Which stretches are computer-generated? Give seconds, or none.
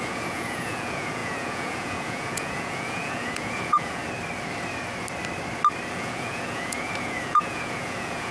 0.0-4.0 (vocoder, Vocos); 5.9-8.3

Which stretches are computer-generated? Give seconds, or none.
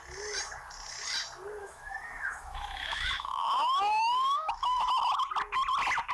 1.6-5.3 (autoencoder, DAC-VAE)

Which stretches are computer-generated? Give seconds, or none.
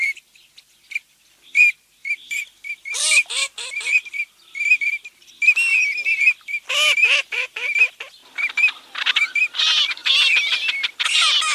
none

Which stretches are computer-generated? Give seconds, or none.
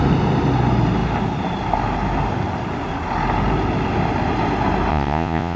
4.9-5.6 (vocoder, Vocos)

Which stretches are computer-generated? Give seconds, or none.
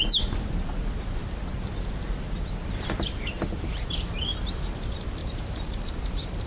5.2-5.8 (vocoder, BigVGAN v2)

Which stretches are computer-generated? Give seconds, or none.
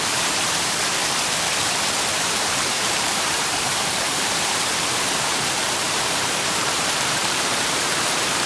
0.0-1.0 (vocoder, BigVGAN v2); 2.1-8.5